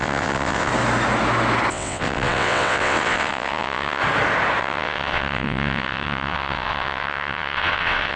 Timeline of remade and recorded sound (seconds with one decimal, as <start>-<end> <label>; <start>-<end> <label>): 0.0-0.7 remade; 0.7-1.7 recorded; 1.7-4.0 remade; 4.0-4.6 recorded; 4.6-8.2 remade